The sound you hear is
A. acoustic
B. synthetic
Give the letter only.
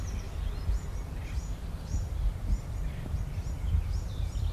A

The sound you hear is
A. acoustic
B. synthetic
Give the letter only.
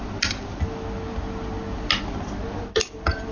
A